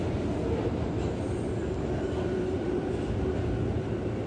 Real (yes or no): yes